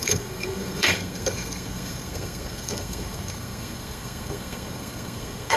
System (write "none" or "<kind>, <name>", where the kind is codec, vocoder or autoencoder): codec, SNAC